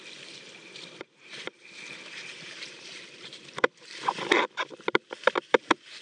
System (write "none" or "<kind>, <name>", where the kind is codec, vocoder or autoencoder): vocoder, BigVGAN v2